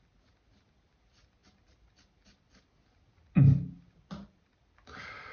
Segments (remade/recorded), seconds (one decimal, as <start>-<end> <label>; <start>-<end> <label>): 0.0-5.3 recorded